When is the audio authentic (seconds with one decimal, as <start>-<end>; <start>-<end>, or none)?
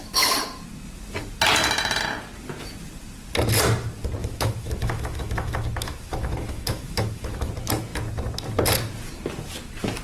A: 0.0-4.2; 7.5-10.0